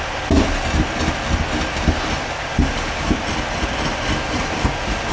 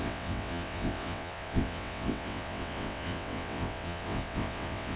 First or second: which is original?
first